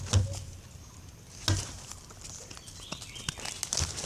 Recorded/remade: recorded